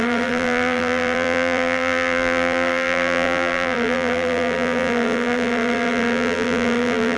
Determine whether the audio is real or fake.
fake